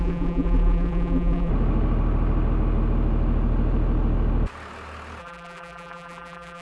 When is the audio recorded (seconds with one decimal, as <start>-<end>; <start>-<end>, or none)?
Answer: 1.5-5.2